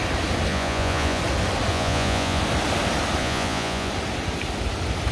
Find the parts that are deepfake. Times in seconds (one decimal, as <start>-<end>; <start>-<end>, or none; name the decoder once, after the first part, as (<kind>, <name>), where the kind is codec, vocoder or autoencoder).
0.5-1.2 (vocoder, Vocos); 1.7-2.4; 3.2-3.9